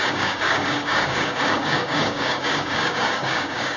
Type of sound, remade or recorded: remade